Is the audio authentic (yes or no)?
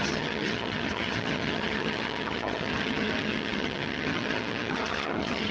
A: no